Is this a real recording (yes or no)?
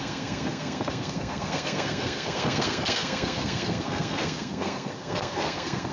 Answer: no